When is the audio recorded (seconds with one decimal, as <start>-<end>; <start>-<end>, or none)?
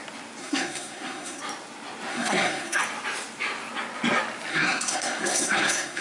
0.0-0.4; 1.4-2.1; 2.8-4.5